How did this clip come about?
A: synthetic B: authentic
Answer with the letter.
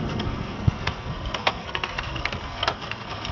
A